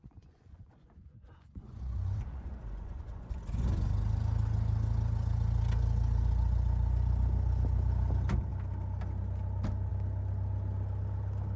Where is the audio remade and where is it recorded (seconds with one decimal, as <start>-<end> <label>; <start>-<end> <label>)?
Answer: 0.0-3.4 remade; 3.4-11.6 recorded